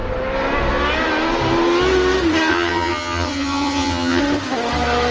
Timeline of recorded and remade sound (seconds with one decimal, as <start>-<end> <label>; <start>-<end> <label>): 0.0-2.5 recorded; 2.5-4.2 remade; 4.2-5.1 recorded